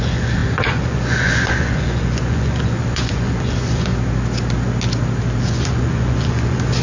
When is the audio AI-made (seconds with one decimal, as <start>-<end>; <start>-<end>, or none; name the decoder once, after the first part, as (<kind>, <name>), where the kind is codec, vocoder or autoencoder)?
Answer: 0.0-3.9 (vocoder, Vocos); 5.4-6.8